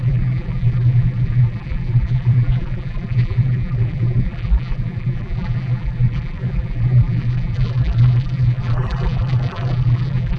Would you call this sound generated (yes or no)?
yes